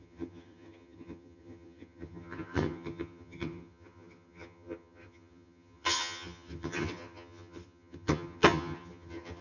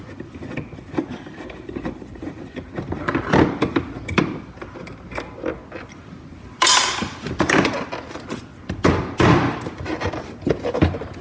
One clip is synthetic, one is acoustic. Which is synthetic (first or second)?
first